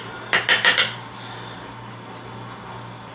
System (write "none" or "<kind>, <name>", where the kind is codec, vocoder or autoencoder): none